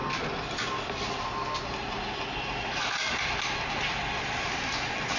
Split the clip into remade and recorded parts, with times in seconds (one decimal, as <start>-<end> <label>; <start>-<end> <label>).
0.0-5.2 recorded